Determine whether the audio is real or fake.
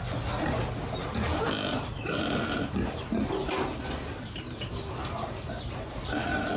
real